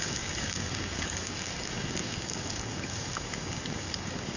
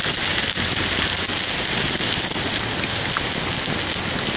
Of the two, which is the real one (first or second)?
second